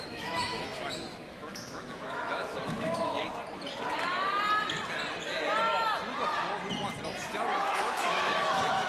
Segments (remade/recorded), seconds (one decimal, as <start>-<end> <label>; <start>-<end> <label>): 0.0-3.3 remade; 3.3-7.7 recorded; 7.7-8.9 remade